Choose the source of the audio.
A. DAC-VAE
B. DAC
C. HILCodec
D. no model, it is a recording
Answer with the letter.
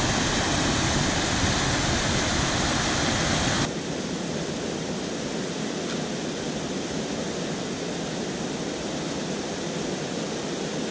D